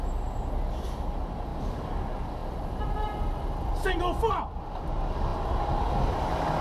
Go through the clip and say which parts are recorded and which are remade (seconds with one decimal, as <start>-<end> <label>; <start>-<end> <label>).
0.0-6.6 recorded